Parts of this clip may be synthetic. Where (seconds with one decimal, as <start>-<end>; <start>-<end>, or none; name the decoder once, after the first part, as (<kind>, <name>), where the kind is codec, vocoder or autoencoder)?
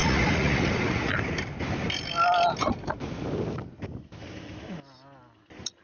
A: 0.0-1.1 (vocoder, Vocos)